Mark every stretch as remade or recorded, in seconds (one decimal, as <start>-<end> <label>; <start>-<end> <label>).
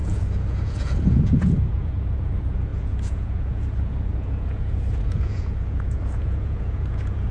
0.0-7.3 remade